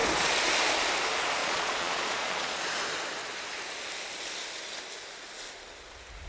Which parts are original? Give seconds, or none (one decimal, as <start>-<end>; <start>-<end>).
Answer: 0.0-1.4; 2.6-6.3